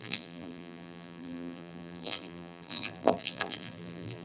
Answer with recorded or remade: remade